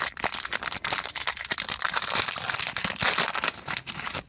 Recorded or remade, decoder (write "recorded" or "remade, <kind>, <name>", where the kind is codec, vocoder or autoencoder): recorded